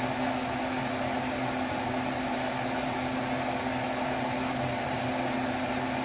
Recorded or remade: recorded